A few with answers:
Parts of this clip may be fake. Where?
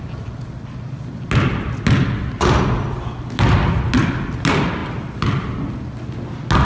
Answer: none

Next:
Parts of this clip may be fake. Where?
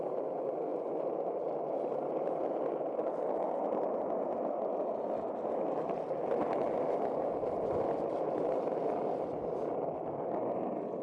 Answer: 0.7-1.4 (vocoder, BigVGAN v2)